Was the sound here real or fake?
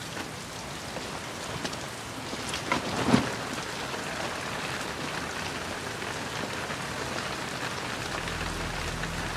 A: real